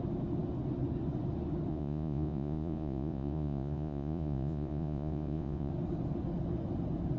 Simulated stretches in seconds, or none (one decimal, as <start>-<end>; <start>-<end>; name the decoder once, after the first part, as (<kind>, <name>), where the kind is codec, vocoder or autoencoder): 1.7-5.7 (vocoder, Vocos)